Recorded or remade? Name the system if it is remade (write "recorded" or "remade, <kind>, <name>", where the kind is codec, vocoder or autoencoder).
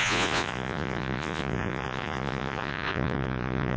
remade, vocoder, Vocos